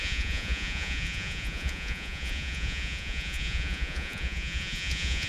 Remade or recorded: remade